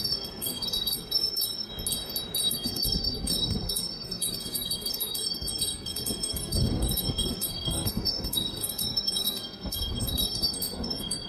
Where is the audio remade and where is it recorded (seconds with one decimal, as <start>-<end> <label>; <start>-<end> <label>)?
0.0-1.7 remade; 1.7-2.5 recorded; 2.5-11.3 remade